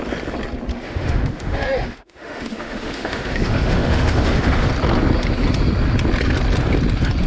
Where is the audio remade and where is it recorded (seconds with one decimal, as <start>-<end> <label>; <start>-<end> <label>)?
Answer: 0.0-0.7 recorded; 0.7-4.7 remade; 4.7-7.3 recorded